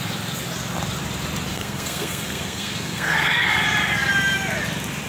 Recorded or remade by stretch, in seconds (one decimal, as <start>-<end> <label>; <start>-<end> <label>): 0.0-1.5 recorded; 1.5-3.6 remade; 3.6-5.1 recorded